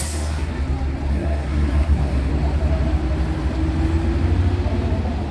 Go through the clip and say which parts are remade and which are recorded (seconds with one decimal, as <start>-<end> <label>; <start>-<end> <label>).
0.0-0.5 remade; 0.5-1.1 recorded; 1.1-2.3 remade; 2.3-5.3 recorded